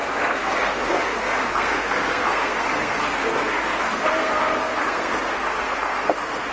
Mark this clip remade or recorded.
remade